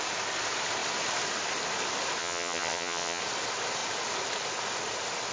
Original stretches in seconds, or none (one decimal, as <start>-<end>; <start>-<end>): 0.0-2.2; 3.2-5.3